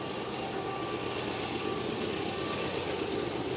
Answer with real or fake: real